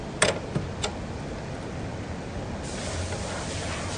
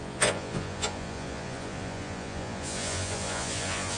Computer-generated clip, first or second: second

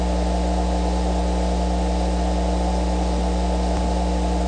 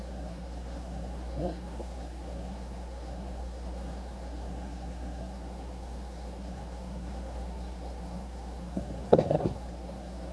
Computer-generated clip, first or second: second